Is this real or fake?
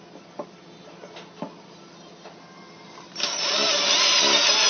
real